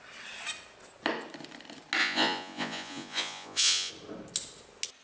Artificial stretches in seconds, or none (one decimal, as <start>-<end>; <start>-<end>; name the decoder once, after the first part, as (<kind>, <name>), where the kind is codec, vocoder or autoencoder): 2.0-3.9 (vocoder, Vocos)